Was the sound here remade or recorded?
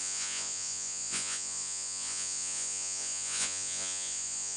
remade